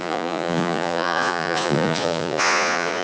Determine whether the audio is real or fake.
fake